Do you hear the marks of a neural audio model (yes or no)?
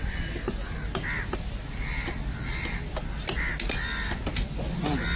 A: no